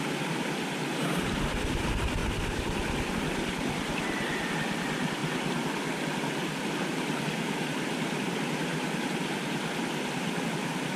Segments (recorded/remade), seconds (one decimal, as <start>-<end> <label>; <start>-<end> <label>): 0.0-2.2 remade; 2.2-3.1 recorded; 3.1-5.2 remade; 5.2-10.4 recorded; 10.4-11.0 remade